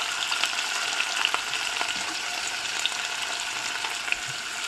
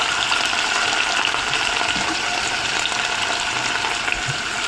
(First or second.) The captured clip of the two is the first